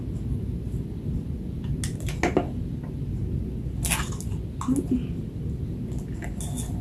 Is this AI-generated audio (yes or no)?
no